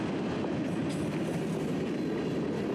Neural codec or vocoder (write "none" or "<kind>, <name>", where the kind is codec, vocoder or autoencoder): none